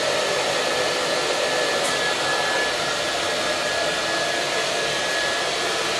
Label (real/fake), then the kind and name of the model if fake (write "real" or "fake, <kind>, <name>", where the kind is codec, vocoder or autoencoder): real